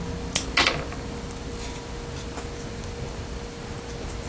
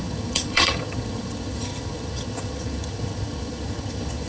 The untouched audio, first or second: first